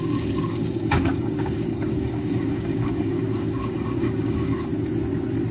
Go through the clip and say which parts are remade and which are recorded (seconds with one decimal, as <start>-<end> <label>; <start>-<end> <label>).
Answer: 0.0-4.7 remade; 4.7-5.5 recorded